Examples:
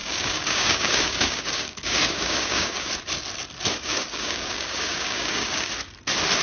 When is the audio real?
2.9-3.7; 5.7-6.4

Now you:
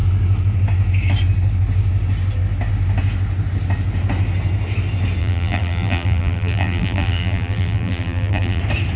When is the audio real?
0.0-5.2; 8.6-9.0

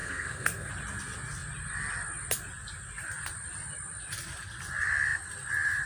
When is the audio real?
0.7-5.9

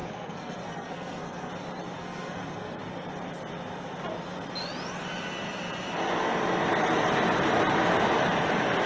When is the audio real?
1.5-2.0; 2.8-8.9

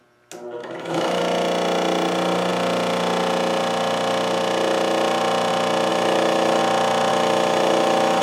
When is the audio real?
0.0-0.6; 1.2-5.9; 6.6-7.1

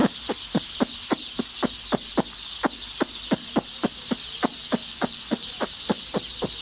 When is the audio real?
0.0-4.9; 6.0-6.6

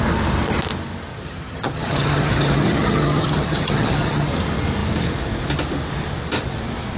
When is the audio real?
0.0-1.1; 4.3-7.0